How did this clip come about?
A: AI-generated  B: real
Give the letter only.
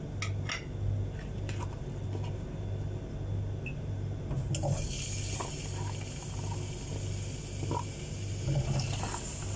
B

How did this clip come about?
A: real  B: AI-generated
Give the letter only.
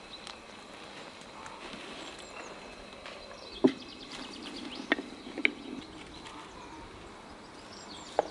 A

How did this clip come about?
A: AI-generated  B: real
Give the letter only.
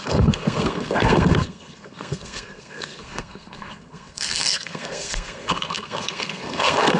A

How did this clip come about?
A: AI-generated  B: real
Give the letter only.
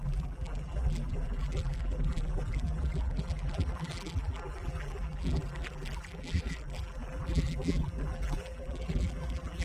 A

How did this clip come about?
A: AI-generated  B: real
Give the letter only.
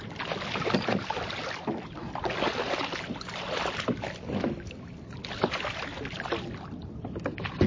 B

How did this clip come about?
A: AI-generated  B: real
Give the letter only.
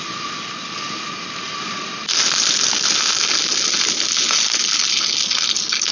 B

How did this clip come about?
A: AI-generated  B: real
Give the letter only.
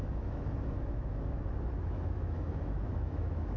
A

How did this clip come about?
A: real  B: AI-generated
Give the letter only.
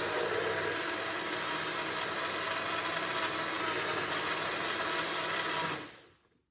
A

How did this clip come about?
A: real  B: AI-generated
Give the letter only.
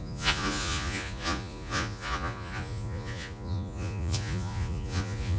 B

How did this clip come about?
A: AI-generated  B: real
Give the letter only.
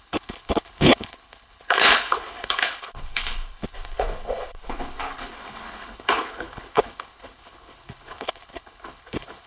A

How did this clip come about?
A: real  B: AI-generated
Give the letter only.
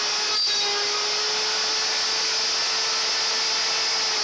A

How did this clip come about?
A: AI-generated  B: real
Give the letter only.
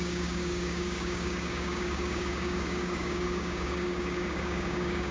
A